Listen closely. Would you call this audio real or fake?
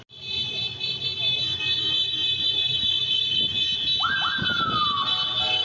real